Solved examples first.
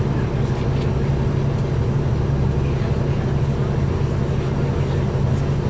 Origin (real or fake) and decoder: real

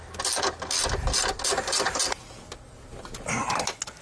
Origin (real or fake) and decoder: real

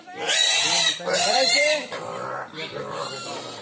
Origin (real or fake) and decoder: real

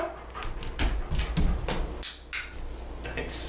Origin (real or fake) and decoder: real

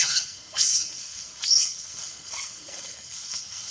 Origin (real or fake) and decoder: fake, codec, SNAC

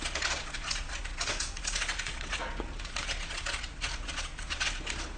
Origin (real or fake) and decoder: fake, vocoder, Vocos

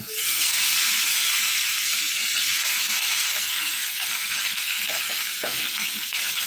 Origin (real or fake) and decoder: fake, codec, SNAC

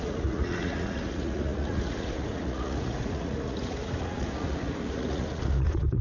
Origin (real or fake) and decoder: fake, vocoder, Vocos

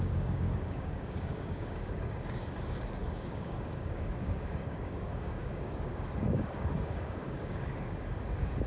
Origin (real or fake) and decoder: fake, codec, DAC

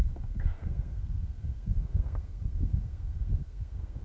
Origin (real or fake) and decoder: fake, codec, SNAC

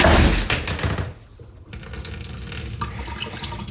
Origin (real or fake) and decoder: real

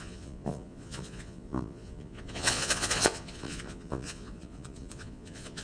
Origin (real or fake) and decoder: fake, vocoder, Vocos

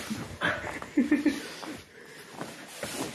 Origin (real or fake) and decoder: fake, vocoder, BigVGAN v2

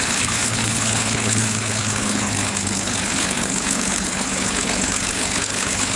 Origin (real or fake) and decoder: fake, codec, HILCodec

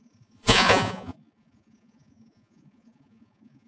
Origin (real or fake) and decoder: fake, vocoder, Vocos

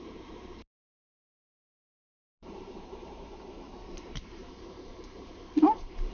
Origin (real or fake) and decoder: fake, vocoder, BigVGAN v2